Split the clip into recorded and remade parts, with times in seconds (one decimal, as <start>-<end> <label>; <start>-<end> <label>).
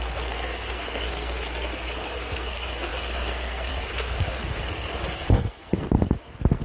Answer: 0.0-6.6 remade